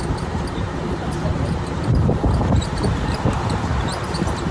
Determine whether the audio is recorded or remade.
remade